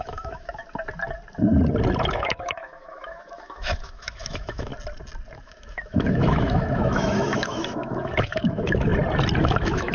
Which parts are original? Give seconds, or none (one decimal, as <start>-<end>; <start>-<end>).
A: 0.6-2.1; 4.7-5.4; 8.9-9.4